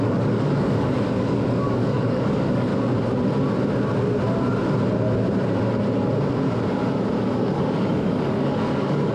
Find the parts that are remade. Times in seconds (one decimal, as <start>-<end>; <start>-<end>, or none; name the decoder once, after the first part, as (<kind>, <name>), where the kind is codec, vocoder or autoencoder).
0.0-2.7 (codec, DAC); 7.2-9.1